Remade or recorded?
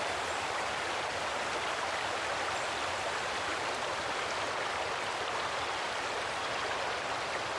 recorded